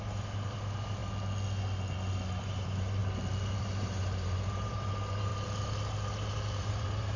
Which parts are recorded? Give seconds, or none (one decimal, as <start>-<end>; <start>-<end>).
1.0-2.4; 3.0-3.6; 5.3-6.6